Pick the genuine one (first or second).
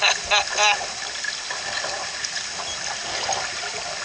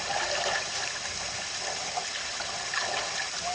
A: first